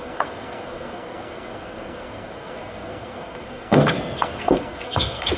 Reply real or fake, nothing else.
fake